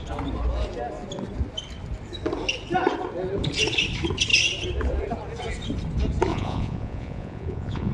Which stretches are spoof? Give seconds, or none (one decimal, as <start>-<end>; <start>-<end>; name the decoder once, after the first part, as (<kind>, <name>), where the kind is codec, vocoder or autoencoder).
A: 6.3-7.9 (vocoder, Vocos)